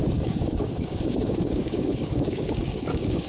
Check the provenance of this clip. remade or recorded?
remade